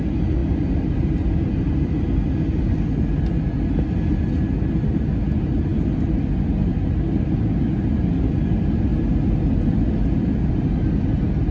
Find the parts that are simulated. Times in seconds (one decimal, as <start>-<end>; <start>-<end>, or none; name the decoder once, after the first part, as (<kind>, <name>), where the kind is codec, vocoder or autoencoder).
none